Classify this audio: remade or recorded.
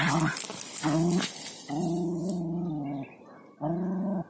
recorded